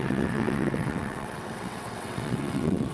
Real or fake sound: fake